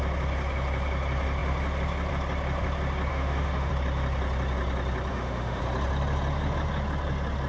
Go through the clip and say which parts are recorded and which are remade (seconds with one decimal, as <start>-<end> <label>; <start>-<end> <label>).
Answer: 0.0-3.1 recorded; 3.1-3.7 remade; 3.7-5.1 recorded; 5.1-5.6 remade; 5.6-7.5 recorded